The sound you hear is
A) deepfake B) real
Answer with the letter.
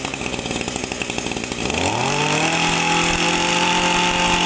B